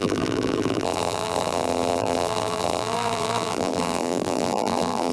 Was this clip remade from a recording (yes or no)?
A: yes